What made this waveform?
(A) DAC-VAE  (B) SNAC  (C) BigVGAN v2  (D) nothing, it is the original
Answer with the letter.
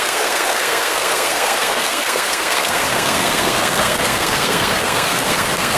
B